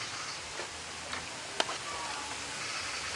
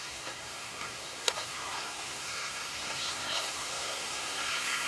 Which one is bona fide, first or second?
first